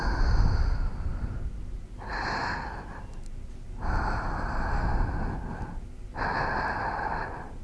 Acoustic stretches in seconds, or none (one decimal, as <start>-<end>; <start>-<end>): 0.0-7.6